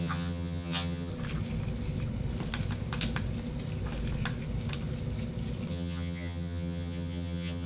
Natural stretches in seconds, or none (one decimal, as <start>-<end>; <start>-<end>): 1.1-5.7